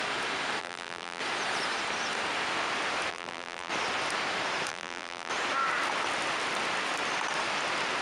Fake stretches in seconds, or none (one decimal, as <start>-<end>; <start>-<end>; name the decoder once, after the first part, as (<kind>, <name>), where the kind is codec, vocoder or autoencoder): 0.6-1.2 (vocoder, BigVGAN v2); 3.1-3.7; 4.7-5.3